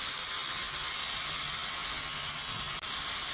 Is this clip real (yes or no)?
yes